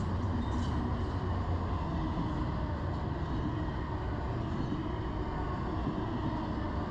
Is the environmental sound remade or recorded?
recorded